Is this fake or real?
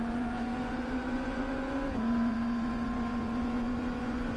fake